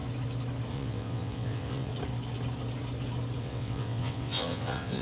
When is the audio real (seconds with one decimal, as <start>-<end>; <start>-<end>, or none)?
0.0-0.7; 1.9-3.4

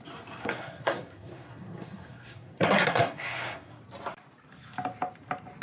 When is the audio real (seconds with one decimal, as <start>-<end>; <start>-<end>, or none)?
0.0-0.4; 3.8-5.6

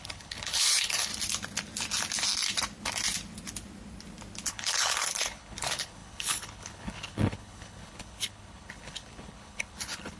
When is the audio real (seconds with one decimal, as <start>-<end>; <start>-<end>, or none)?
1.1-4.5

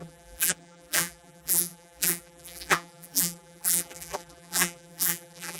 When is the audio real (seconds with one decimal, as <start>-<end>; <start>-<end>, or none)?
none

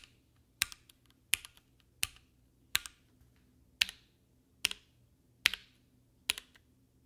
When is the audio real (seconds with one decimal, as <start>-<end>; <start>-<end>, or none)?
0.0-7.1

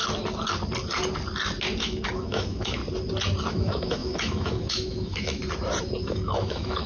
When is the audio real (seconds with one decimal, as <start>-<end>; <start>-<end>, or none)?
0.0-1.8; 2.8-3.5; 5.4-6.0

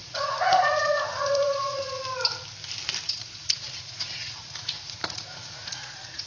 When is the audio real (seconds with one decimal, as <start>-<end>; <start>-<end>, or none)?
2.0-3.1

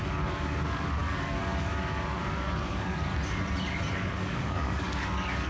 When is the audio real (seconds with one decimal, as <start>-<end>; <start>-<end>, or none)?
3.1-3.9